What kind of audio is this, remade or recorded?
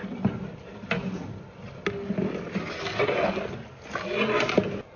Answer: recorded